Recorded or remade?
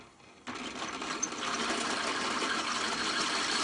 recorded